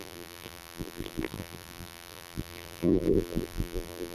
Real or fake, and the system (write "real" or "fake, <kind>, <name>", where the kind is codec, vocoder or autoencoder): fake, vocoder, BigVGAN v2